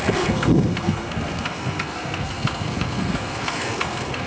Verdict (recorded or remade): remade